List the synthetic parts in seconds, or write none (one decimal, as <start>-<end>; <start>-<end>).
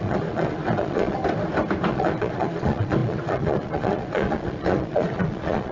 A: 0.0-1.2; 1.9-5.7